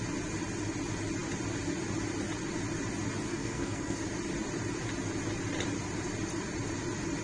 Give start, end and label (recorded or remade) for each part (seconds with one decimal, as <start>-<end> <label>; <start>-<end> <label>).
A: 0.0-3.3 recorded; 3.3-4.0 remade; 4.0-7.2 recorded